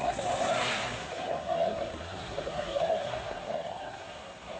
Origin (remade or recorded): remade